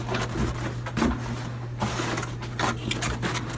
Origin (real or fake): real